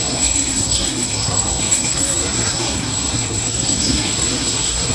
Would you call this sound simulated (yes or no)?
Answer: yes